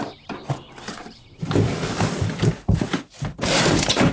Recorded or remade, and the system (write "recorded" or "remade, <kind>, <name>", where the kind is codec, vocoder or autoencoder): remade, vocoder, BigVGAN v2